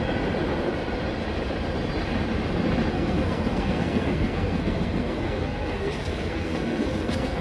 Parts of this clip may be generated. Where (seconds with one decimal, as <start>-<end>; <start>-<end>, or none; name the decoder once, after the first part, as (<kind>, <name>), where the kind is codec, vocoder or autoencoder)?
2.9-7.4 (codec, SNAC)